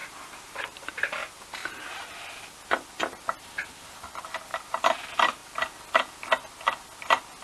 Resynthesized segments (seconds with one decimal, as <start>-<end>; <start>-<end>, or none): 0.0-2.5; 4.5-5.0